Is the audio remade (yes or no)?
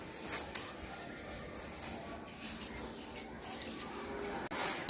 no